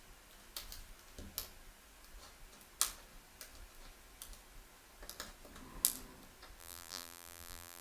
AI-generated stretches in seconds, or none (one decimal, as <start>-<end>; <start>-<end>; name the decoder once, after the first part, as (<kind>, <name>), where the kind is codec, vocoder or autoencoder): 6.6-7.8 (vocoder, BigVGAN v2)